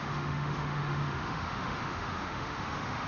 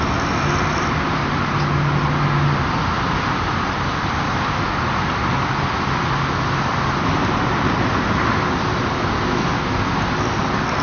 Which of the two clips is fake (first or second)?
first